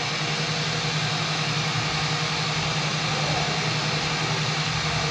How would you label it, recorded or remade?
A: recorded